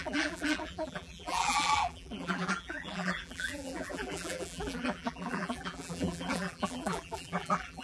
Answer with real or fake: fake